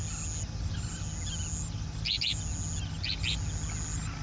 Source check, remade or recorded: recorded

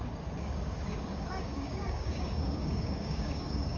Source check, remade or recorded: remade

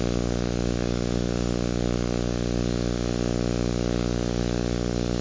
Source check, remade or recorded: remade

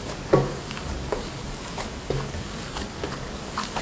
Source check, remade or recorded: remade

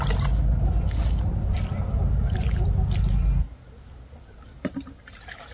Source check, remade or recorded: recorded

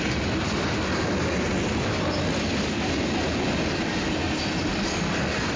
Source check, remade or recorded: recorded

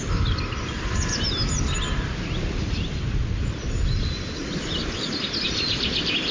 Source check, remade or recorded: recorded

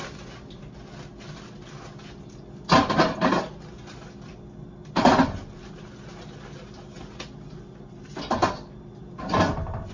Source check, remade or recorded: recorded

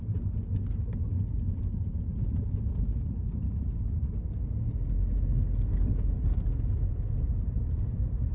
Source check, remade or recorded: recorded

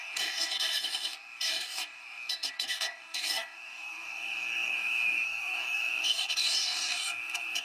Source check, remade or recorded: remade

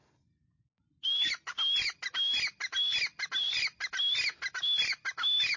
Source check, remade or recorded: recorded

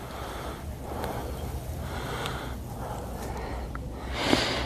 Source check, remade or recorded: recorded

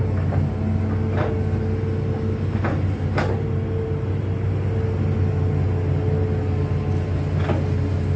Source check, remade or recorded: recorded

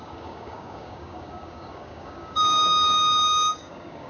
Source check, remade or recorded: remade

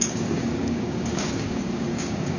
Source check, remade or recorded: remade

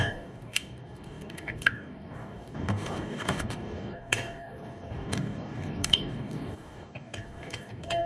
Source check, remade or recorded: remade